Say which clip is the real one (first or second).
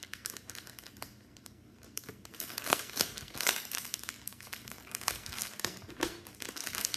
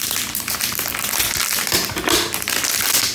second